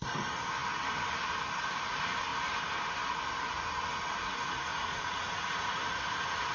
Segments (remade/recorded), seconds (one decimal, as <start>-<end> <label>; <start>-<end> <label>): 0.0-4.7 recorded; 4.7-5.8 remade; 5.8-6.5 recorded